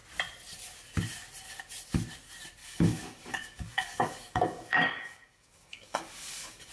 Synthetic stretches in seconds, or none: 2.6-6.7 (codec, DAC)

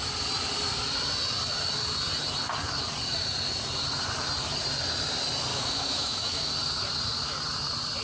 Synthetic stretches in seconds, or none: 5.5-6.5 (autoencoder, DAC-VAE)

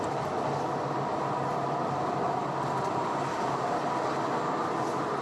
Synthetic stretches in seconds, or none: none

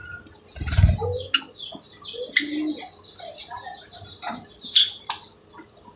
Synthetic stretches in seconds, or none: 3.4-5.0 (vocoder, BigVGAN v2)

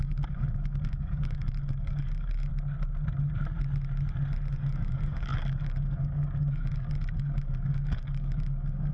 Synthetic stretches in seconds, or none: 0.0-2.5 (codec, DAC); 4.5-8.9

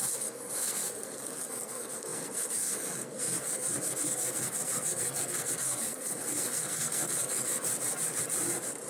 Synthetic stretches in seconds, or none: 0.0-7.7 (codec, SNAC)

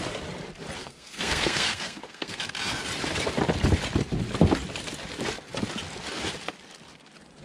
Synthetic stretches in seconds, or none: 0.8-2.5 (codec, SNAC)